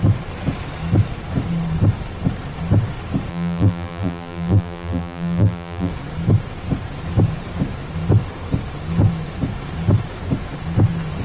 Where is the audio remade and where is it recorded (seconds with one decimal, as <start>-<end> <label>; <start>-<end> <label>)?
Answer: 0.0-3.3 recorded; 3.3-5.9 remade; 5.9-11.2 recorded